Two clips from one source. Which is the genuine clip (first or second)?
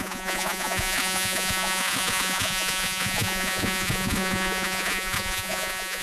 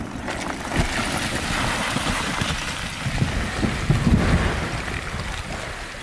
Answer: second